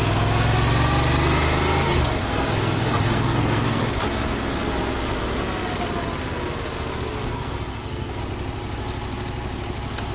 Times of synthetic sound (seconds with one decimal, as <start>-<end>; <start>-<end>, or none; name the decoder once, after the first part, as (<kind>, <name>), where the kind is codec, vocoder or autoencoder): 2.2-3.8 (codec, SNAC); 7.2-8.2